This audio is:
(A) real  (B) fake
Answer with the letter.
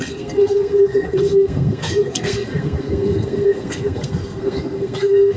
B